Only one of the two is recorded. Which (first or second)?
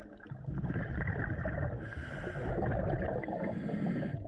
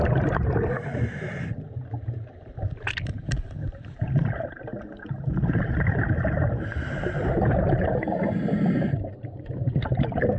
first